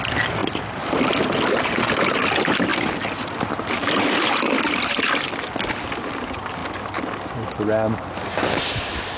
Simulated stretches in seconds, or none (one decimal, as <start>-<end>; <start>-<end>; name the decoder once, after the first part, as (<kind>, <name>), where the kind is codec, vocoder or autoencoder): 0.4-1.2 (vocoder, BigVGAN v2); 2.7-5.0